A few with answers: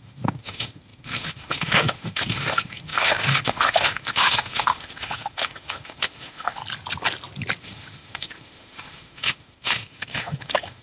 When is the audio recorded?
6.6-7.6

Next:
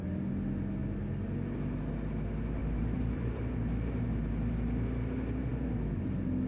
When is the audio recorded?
0.0-2.6; 3.4-6.5

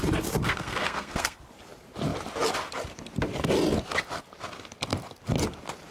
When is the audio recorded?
0.0-0.4; 1.4-5.9

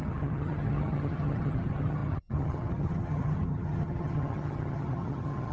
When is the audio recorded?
none

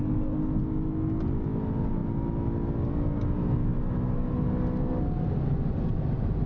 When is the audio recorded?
0.0-6.5

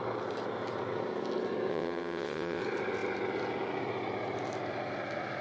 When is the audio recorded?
0.0-1.7; 2.6-5.4

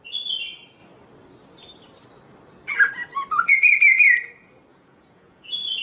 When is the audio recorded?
0.0-4.7

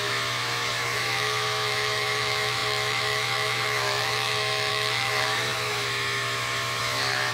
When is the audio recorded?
none